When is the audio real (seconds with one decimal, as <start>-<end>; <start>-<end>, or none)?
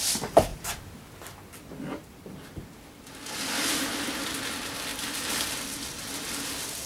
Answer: 0.5-2.8